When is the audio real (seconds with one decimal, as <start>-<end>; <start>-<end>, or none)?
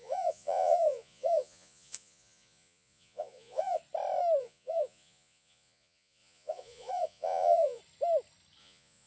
3.8-4.4; 7.8-8.6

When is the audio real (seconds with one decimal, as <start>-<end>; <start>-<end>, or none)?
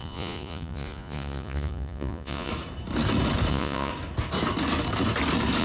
2.5-3.5; 3.9-5.6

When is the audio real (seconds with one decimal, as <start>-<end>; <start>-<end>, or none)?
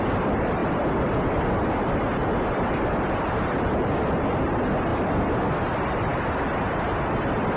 2.2-2.7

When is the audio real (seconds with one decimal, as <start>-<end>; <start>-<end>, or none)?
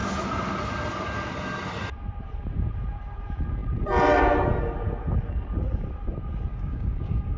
0.0-6.5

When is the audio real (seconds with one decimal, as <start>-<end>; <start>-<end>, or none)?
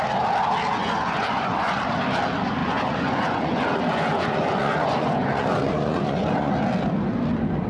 0.0-0.7; 1.8-2.6; 6.5-7.7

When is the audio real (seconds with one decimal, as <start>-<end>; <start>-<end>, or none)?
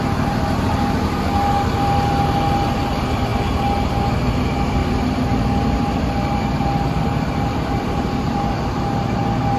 0.0-4.8